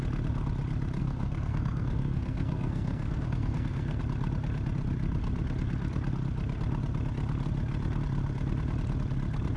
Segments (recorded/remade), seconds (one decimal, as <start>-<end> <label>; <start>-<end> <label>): 0.0-1.0 recorded; 1.0-4.0 remade; 4.0-9.6 recorded